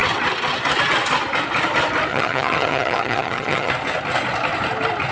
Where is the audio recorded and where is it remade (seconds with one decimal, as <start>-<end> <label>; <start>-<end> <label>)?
0.0-2.1 recorded; 2.1-3.7 remade; 3.7-5.1 recorded